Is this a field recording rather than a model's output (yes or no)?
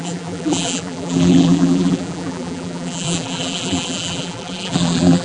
no